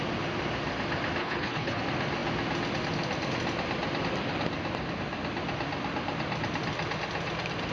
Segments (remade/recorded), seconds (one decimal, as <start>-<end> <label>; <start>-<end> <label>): 0.0-1.2 recorded; 1.2-1.8 remade; 1.8-7.7 recorded